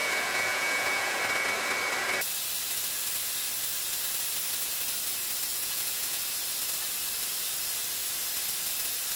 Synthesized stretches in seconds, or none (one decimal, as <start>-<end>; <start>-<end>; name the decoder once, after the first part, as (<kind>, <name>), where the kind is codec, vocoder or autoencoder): 0.0-1.2 (vocoder, Vocos); 5.5-6.2